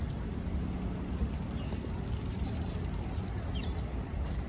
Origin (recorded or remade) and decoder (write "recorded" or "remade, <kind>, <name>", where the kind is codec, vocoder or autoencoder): recorded